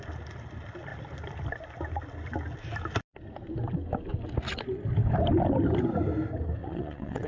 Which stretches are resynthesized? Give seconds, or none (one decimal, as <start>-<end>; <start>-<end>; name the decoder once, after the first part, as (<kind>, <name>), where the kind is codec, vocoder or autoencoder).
6.6-7.3 (vocoder, WaveNeXt)